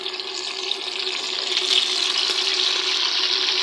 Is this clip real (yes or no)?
yes